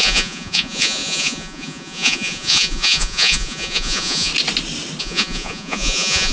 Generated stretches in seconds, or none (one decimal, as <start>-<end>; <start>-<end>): 0.0-4.3; 5.0-6.3